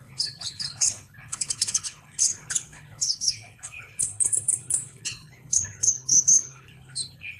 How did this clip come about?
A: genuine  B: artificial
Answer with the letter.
B